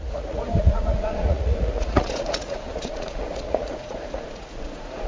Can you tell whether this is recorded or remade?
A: remade